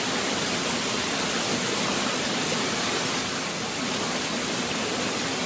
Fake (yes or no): no